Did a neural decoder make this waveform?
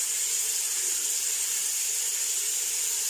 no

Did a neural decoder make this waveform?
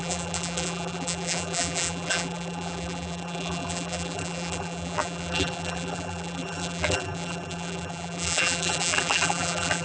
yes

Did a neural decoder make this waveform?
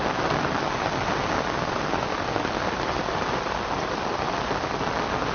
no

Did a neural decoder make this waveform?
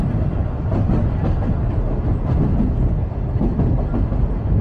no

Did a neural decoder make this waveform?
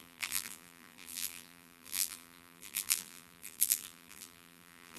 yes